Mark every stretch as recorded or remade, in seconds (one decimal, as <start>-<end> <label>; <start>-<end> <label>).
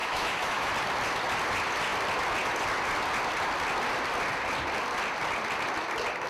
0.0-0.7 remade; 0.7-6.3 recorded